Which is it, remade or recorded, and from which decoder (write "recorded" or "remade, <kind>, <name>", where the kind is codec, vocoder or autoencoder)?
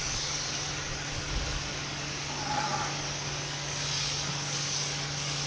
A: remade, codec, DAC